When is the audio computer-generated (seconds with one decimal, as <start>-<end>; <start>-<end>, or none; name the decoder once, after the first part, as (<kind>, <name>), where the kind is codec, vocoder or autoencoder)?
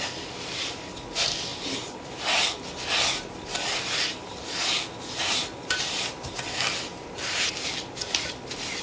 6.9-7.5 (vocoder, BigVGAN v2)